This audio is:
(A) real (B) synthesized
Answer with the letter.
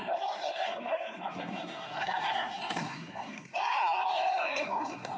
B